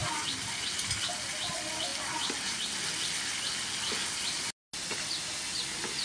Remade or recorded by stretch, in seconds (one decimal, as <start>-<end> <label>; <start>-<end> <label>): 0.0-6.0 recorded